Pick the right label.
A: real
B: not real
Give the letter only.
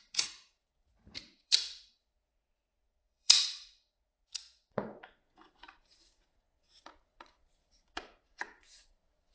B